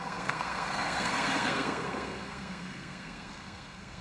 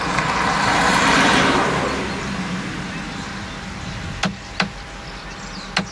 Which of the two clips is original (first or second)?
second